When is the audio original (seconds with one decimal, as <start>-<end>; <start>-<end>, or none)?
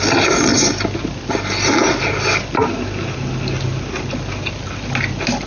0.0-5.5